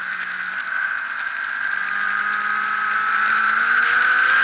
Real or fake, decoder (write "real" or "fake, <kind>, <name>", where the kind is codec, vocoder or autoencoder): real